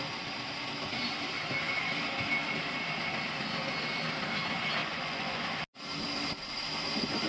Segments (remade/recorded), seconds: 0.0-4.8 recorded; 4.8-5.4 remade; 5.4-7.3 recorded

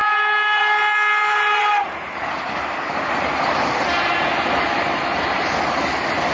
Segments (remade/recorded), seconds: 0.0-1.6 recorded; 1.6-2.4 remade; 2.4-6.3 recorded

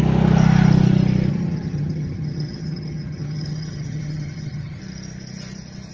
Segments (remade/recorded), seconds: 0.0-1.3 recorded; 1.3-4.8 remade; 4.8-5.9 recorded